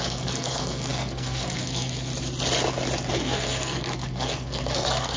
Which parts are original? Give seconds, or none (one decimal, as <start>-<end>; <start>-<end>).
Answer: 2.1-3.1